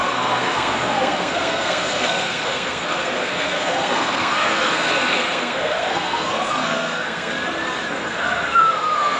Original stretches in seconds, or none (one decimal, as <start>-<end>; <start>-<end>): 7.3-7.9